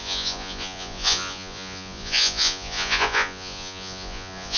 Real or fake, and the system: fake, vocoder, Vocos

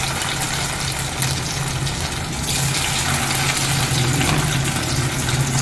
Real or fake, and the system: real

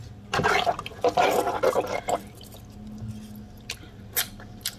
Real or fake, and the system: real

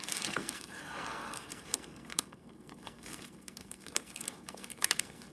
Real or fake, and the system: fake, codec, SNAC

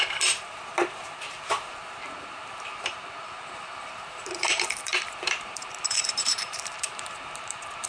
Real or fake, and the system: fake, vocoder, BigVGAN v2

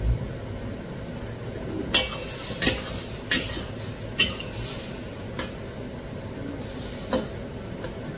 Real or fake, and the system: real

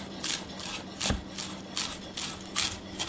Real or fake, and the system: real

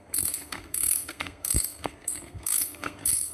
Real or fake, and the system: fake, codec, SNAC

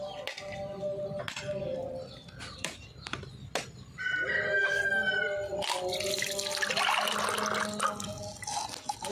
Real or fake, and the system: real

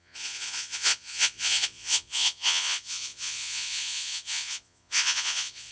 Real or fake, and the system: fake, vocoder, Vocos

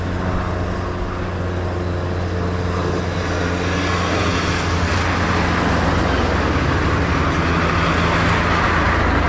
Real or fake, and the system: real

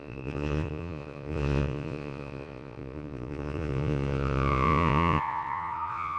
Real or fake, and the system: fake, vocoder, Vocos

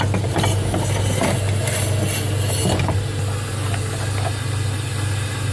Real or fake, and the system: real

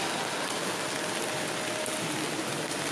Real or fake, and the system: real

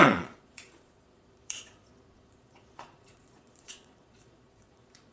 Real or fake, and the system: fake, vocoder, Vocos